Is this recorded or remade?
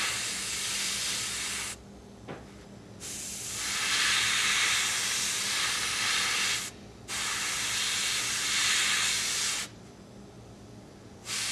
recorded